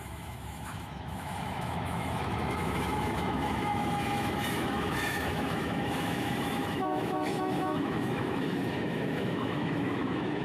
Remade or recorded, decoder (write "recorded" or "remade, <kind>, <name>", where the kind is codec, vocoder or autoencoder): remade, autoencoder, DAC-VAE